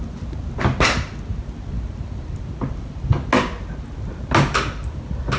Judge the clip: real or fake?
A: real